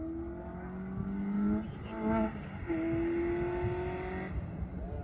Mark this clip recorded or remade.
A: recorded